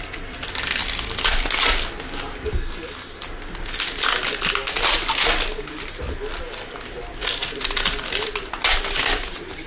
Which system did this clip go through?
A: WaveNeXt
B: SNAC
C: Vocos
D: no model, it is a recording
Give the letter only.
D